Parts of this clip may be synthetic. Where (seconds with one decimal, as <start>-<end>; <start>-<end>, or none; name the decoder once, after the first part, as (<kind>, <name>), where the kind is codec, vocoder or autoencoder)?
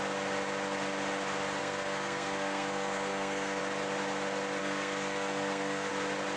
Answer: 1.6-3.6 (codec, SNAC); 4.6-5.9